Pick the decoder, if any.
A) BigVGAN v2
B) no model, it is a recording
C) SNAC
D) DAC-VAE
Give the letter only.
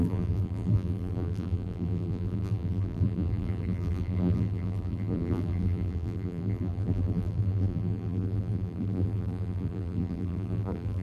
A